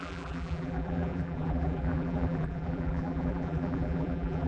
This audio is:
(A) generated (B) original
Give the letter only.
A